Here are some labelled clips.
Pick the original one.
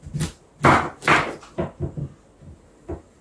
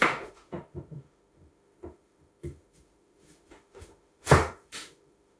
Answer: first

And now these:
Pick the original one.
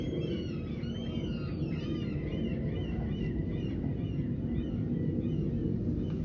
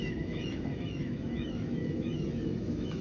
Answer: first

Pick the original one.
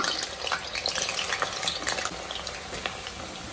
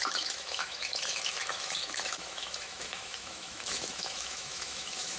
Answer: first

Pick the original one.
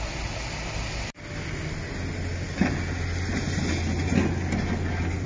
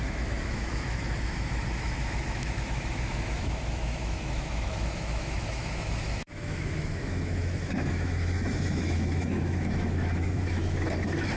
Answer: first